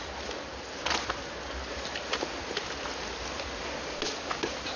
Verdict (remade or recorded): recorded